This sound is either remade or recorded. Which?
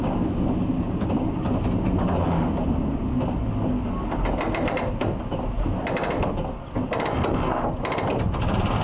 recorded